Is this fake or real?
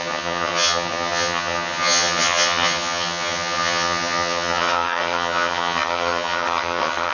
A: fake